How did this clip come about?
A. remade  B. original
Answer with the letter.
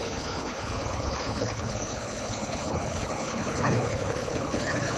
A